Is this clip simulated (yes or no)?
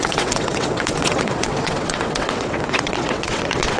yes